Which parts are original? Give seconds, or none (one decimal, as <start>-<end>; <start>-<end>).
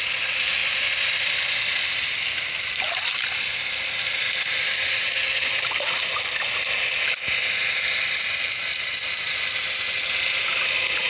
0.0-11.1